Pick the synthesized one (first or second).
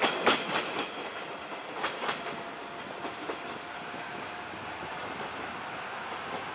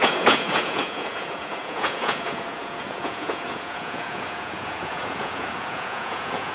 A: second